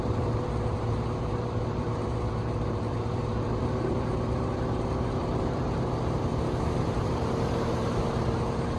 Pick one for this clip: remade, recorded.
remade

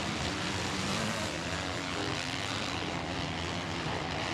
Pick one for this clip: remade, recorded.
recorded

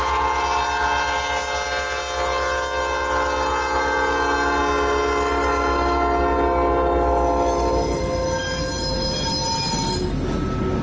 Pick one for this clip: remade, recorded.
recorded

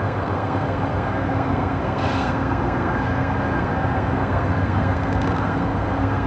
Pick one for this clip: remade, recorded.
remade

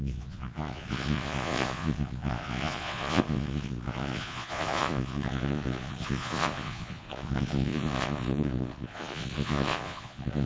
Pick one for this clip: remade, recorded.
remade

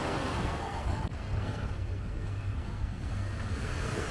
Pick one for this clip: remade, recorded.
remade